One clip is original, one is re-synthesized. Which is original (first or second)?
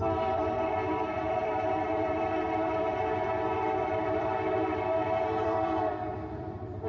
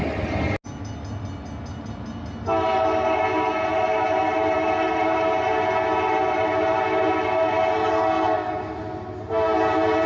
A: second